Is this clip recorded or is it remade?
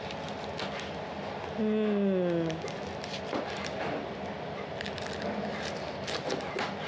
recorded